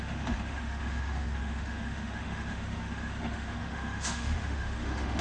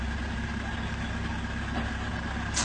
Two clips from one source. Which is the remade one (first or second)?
first